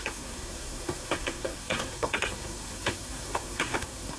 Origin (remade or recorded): remade